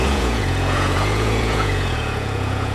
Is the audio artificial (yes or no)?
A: yes